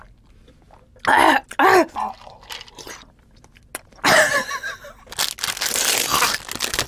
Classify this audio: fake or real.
real